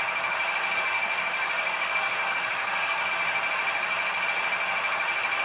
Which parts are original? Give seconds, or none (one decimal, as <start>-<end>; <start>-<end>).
0.0-0.9; 3.0-5.4